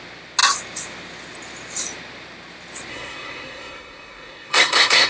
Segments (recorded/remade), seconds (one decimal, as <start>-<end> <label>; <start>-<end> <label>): 0.0-2.9 recorded; 2.9-5.1 remade